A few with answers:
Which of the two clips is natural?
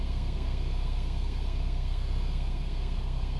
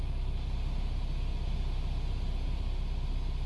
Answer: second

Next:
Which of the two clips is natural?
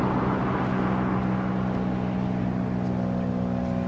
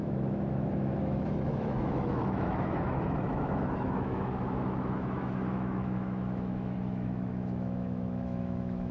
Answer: first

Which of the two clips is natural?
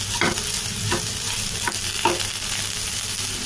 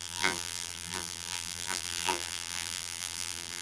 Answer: first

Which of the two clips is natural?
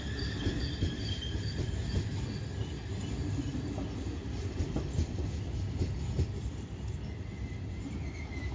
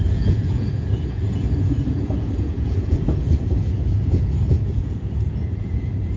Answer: first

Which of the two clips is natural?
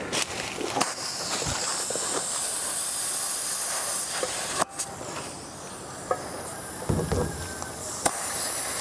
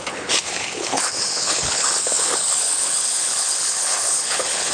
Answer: first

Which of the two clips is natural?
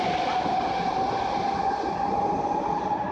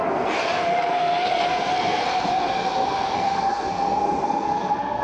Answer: first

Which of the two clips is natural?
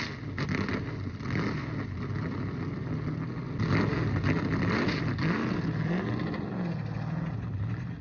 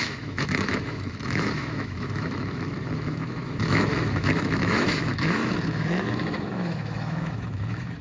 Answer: first